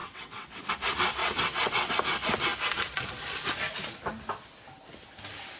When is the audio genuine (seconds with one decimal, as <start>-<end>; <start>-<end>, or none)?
0.6-1.2; 1.9-5.6